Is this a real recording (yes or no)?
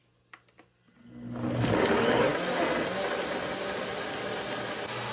yes